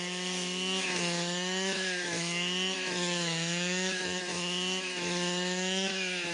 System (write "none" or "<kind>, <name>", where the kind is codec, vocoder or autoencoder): autoencoder, DAC-VAE